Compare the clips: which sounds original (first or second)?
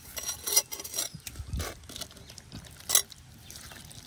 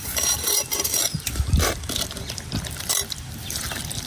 first